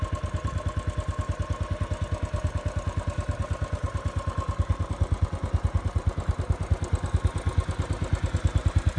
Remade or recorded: recorded